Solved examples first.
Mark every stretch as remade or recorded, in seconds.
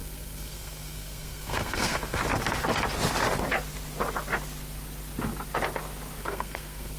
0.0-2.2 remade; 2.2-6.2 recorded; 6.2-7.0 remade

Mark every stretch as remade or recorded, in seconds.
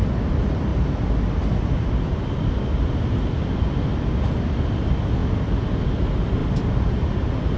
0.0-7.6 recorded